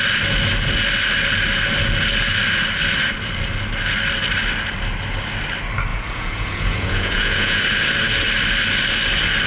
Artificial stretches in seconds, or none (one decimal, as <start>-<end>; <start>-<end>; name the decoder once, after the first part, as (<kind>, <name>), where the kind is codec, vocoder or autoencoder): 5.9-7.6 (vocoder, Vocos)